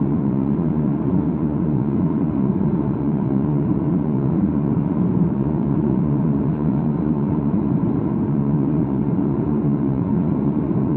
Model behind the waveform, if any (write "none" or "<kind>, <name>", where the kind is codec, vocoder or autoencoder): vocoder, Vocos